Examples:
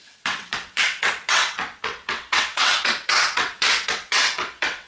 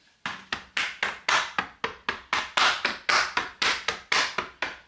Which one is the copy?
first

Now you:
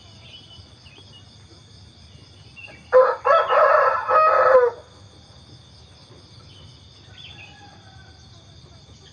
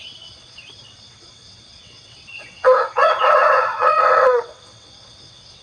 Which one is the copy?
second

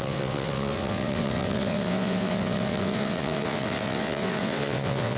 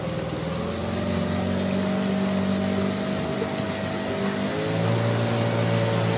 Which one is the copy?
first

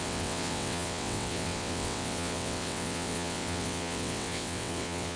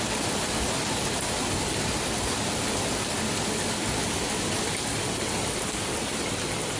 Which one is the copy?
first